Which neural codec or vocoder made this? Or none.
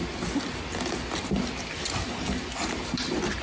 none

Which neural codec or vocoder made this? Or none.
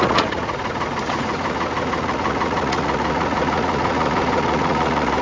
vocoder, Vocos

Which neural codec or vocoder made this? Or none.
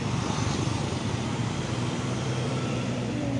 vocoder, BigVGAN v2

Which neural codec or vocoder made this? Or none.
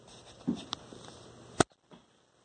none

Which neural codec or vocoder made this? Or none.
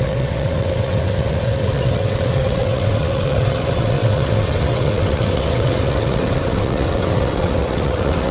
vocoder, WaveNeXt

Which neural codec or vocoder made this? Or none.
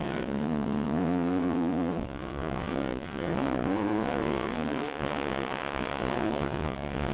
vocoder, WaveNeXt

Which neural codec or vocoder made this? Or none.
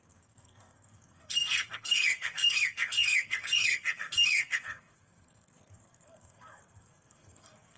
codec, SNAC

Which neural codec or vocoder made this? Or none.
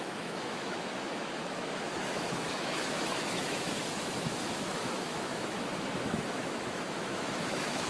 autoencoder, DAC-VAE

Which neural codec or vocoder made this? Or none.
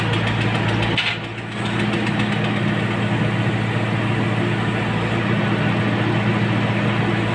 none